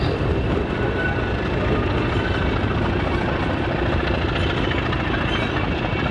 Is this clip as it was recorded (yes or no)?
yes